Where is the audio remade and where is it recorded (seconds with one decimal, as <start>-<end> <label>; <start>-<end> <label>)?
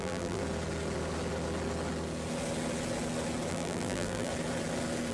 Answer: 0.0-0.4 remade; 0.4-3.5 recorded; 3.5-4.3 remade; 4.3-5.1 recorded